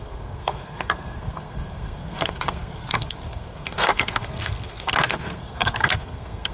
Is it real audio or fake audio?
fake